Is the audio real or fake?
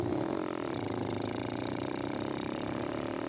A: real